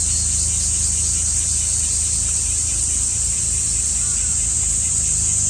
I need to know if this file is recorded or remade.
recorded